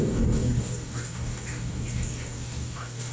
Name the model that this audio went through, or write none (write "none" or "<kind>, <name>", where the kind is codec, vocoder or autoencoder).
codec, DAC